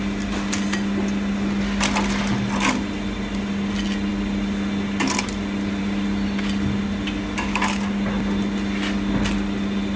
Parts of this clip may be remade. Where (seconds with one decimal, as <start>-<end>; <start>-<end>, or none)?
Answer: none